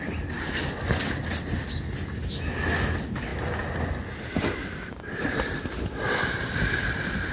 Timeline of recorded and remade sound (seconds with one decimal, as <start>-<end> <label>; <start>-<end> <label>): 0.0-7.3 recorded